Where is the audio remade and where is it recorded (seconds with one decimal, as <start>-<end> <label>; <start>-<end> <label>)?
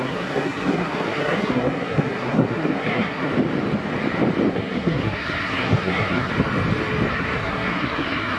0.0-3.3 remade; 3.3-4.5 recorded; 4.5-6.3 remade; 6.3-7.1 recorded; 7.1-8.4 remade